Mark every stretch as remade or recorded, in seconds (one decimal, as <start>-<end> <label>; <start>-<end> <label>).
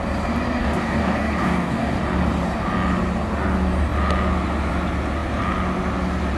0.0-0.6 recorded; 0.6-2.0 remade; 2.0-6.4 recorded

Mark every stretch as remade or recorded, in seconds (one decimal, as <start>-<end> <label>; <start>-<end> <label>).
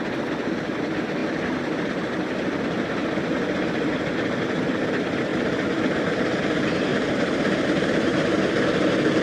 0.0-5.3 recorded; 5.3-6.0 remade; 6.0-6.9 recorded; 6.9-9.2 remade